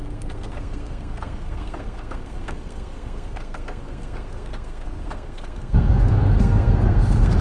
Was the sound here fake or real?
fake